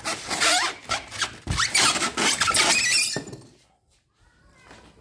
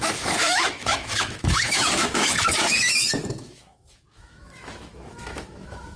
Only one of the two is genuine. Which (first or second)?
first